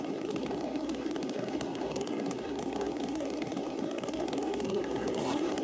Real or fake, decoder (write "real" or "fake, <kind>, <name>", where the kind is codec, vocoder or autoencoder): fake, codec, SNAC